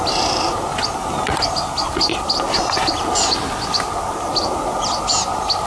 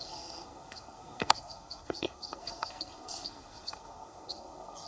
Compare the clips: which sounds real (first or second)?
first